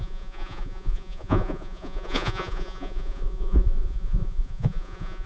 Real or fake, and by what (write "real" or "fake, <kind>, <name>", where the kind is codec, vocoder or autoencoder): fake, vocoder, Vocos